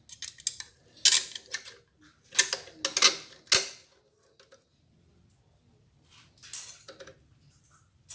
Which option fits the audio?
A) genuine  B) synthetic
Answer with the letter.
A